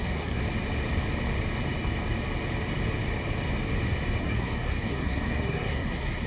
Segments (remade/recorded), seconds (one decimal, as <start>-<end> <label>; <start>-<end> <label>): 0.0-0.4 remade; 0.4-4.2 recorded; 4.2-6.3 remade